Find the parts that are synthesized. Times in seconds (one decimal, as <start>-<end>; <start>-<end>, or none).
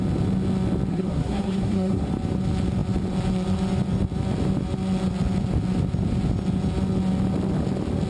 0.9-2.1